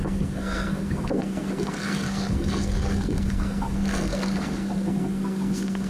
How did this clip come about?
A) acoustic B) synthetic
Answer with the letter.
B